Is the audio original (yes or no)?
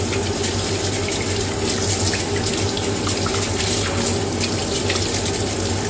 yes